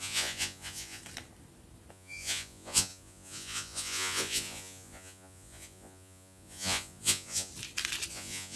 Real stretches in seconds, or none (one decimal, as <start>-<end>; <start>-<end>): 1.0-1.9; 7.5-8.1